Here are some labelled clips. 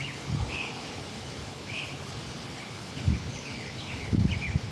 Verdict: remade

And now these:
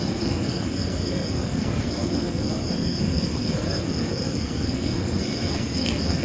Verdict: remade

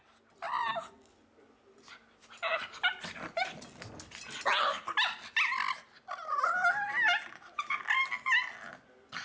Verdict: recorded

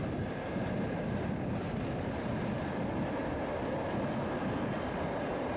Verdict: recorded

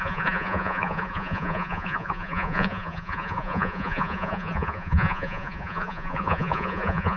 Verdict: remade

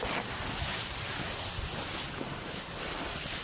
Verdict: recorded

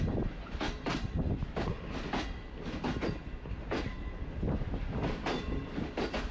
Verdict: recorded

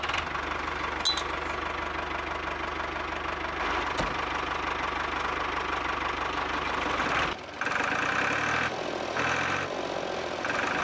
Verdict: recorded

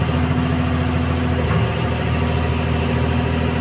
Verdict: recorded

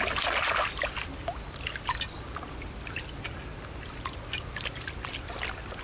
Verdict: recorded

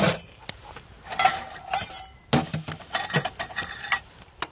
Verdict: recorded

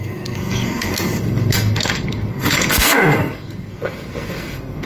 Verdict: remade